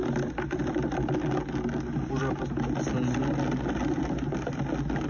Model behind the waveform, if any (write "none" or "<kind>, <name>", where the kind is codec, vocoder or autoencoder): none